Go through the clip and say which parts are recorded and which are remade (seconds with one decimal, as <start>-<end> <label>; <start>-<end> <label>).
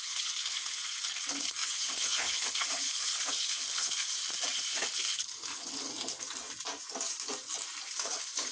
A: 0.0-4.2 remade; 4.2-4.8 recorded; 4.8-5.9 remade; 5.9-7.9 recorded; 7.9-8.5 remade